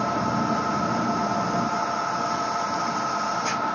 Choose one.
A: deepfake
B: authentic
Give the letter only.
B